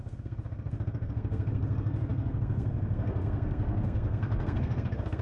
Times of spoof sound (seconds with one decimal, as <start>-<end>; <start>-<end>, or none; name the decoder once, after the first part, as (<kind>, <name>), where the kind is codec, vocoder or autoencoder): 0.0-5.2 (codec, SNAC)